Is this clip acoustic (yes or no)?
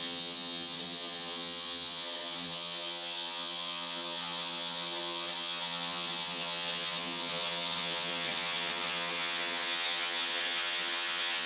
no